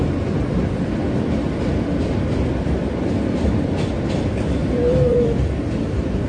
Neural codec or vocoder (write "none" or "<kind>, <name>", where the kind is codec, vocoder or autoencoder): vocoder, BigVGAN v2